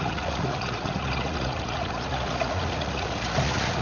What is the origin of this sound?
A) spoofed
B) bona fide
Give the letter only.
A